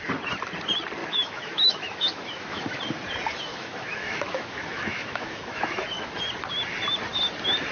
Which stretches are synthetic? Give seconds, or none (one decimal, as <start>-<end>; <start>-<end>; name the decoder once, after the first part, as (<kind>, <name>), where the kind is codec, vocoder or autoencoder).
1.0-2.6 (autoencoder, DAC-VAE); 3.5-6.1